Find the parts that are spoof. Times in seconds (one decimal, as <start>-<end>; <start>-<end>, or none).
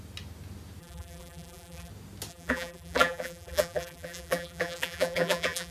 0.8-1.9; 2.3-5.7